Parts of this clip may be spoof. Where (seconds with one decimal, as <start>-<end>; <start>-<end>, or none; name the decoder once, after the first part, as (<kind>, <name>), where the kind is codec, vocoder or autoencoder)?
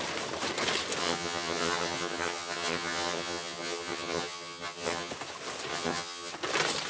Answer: 1.0-5.1 (vocoder, HiFi-GAN); 5.7-6.3